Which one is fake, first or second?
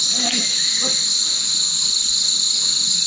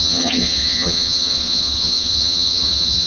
second